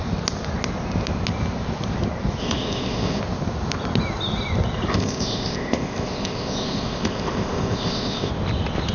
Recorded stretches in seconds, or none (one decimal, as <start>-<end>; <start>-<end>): 0.0-2.4; 3.2-4.9; 8.3-8.9